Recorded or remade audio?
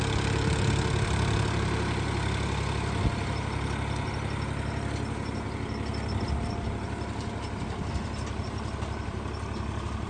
recorded